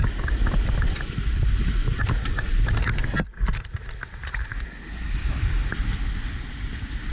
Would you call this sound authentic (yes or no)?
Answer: yes